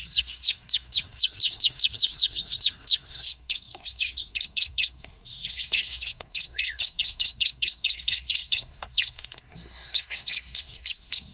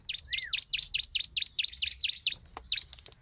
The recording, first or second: second